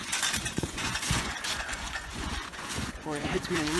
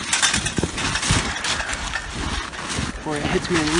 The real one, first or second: second